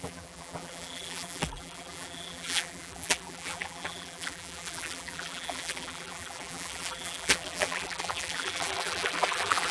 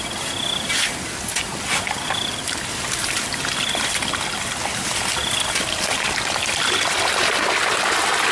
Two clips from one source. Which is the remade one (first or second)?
first